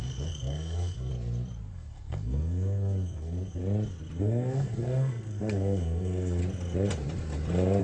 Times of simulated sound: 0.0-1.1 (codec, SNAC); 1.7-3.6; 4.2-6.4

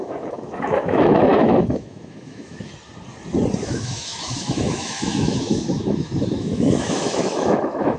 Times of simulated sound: 0.0-2.7 (autoencoder, DAC-VAE); 3.6-8.0

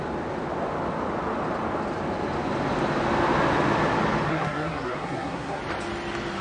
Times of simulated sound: 4.3-5.6 (codec, SNAC)

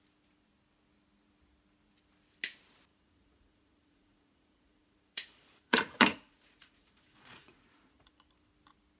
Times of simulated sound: 2.9-8.1 (vocoder, Vocos)

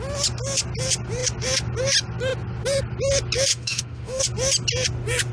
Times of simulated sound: 3.5-4.2 (autoencoder, DAC-VAE)

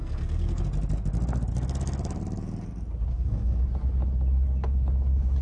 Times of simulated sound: 0.0-0.6 (codec, SNAC); 3.1-3.6

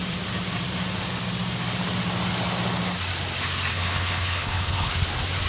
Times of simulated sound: 3.7-4.9 (codec, HILCodec)